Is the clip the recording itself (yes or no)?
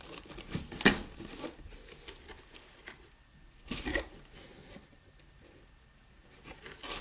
yes